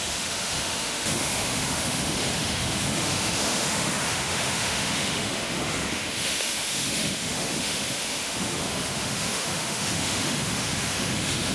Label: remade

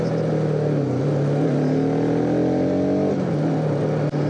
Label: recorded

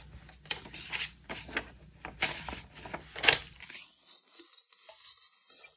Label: recorded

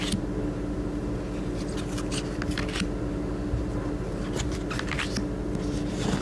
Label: recorded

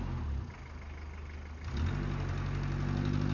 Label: recorded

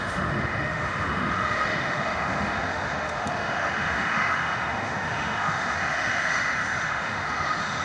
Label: remade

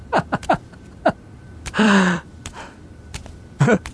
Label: remade